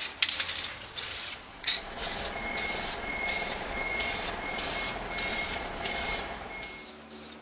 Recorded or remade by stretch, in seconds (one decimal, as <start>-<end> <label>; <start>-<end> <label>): 0.0-0.7 recorded; 0.7-4.7 remade; 4.7-5.3 recorded; 5.3-6.2 remade; 6.2-7.4 recorded